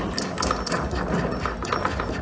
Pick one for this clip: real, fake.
real